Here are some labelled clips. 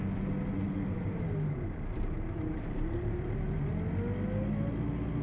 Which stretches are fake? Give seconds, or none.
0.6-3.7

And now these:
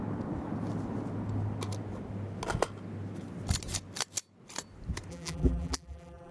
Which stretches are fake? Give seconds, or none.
5.1-6.3

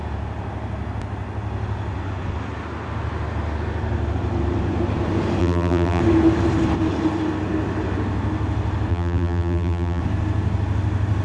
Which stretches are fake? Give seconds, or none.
5.4-6.0; 8.9-10.0